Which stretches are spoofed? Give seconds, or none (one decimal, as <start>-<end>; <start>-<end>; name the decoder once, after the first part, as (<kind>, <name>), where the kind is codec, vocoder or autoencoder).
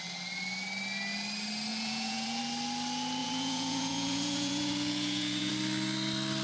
1.7-2.4 (vocoder, Vocos); 3.2-5.5